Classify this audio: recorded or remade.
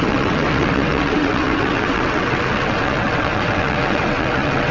remade